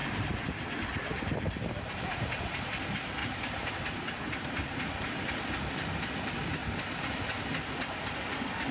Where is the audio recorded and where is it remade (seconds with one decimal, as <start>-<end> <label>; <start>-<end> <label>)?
0.0-2.6 remade; 2.6-3.2 recorded; 3.2-3.7 remade; 3.7-8.7 recorded